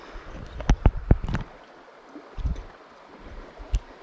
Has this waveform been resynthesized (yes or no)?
no